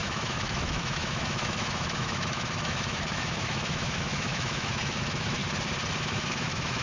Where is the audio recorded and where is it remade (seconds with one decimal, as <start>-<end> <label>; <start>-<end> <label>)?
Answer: 0.0-5.4 remade; 5.4-6.0 recorded; 6.0-6.8 remade